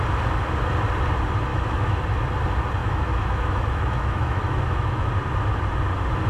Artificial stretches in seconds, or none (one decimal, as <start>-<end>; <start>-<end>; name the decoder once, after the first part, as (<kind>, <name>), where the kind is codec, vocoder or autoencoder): 1.5-2.0 (autoencoder, DAC-VAE); 2.8-5.1